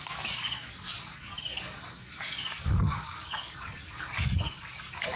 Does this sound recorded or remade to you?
remade